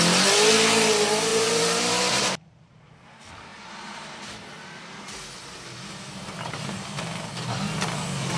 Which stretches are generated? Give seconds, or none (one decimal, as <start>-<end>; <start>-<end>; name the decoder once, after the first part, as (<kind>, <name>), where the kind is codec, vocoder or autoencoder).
1.3-2.9 (vocoder, BigVGAN v2); 3.5-5.1